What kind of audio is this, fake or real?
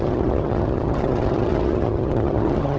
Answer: fake